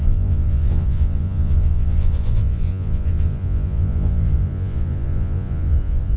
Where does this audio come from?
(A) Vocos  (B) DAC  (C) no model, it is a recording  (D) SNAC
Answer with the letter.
A